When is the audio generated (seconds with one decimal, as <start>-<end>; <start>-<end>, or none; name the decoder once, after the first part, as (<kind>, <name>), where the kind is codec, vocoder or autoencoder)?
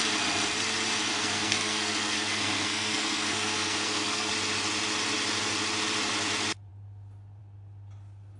1.1-4.3 (codec, SNAC)